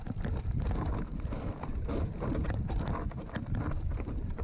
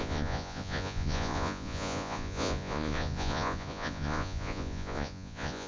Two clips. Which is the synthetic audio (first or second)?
second